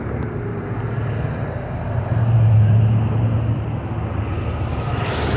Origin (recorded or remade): recorded